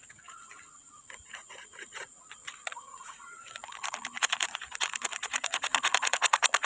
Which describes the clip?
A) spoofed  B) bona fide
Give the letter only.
A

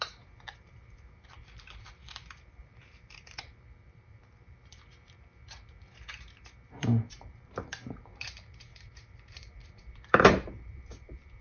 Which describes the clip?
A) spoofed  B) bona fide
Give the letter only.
A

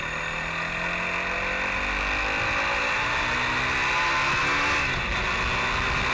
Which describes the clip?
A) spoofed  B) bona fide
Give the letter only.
B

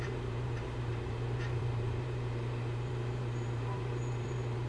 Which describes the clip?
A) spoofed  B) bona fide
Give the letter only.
A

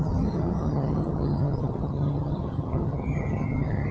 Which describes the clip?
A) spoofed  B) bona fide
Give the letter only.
A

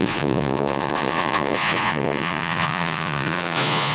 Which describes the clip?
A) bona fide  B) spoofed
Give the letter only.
B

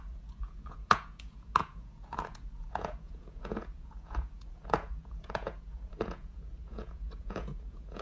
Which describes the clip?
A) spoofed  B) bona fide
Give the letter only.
A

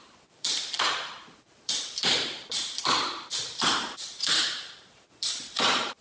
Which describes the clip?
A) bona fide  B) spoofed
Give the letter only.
B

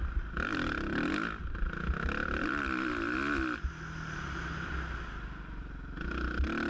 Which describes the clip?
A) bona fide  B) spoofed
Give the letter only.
A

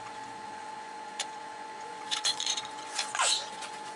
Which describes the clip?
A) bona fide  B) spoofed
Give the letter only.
B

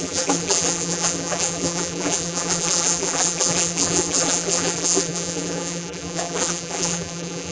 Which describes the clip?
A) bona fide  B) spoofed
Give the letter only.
B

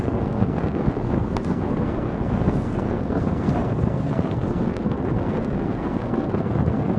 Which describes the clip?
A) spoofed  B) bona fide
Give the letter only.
A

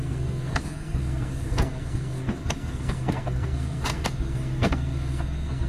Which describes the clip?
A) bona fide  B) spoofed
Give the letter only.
B